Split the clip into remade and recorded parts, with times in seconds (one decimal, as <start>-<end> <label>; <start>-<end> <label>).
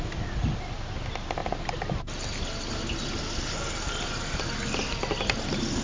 0.0-5.8 recorded